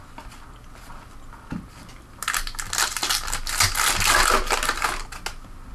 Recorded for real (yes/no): yes